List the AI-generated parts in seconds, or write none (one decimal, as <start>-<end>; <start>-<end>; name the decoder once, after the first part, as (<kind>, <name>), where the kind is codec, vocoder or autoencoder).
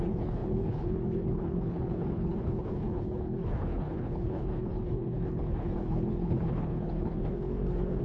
0.0-8.0 (codec, HILCodec)